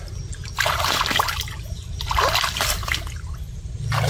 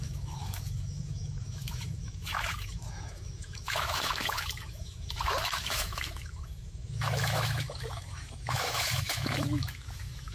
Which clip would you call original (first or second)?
first